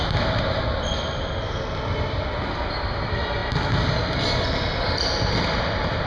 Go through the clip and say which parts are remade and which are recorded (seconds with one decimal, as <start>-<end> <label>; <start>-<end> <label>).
0.0-6.1 recorded